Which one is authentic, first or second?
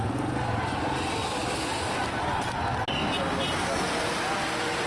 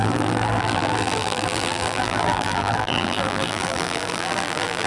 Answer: first